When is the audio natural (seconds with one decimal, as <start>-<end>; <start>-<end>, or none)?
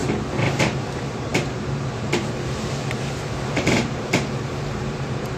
0.0-0.6